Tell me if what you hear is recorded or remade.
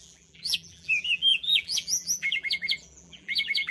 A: remade